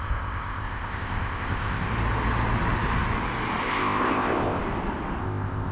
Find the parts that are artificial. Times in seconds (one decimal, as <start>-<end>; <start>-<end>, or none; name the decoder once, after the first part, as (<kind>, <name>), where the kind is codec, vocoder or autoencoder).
0.0-1.9 (codec, ZipCodec); 3.6-4.6; 5.2-5.7